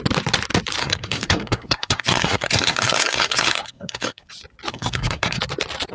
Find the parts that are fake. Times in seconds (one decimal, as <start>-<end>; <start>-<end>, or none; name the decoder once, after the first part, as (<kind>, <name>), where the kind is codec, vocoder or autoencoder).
0.8-4.3 (codec, SNAC); 4.7-5.4